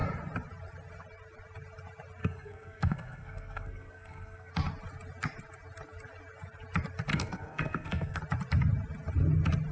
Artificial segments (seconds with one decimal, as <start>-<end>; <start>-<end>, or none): 2.2-4.5; 7.1-8.2